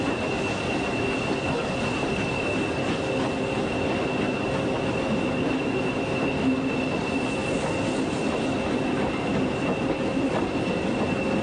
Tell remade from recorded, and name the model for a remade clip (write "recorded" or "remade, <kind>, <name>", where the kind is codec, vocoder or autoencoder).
recorded